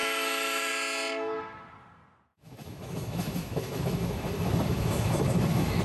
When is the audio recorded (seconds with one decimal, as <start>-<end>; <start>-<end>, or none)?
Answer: 0.7-2.3